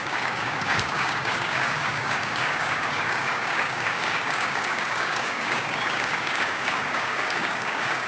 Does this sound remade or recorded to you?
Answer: remade